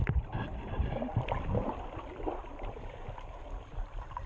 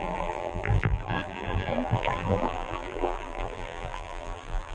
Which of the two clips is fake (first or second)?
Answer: second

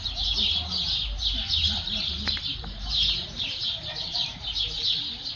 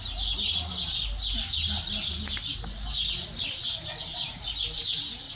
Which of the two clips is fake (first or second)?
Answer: first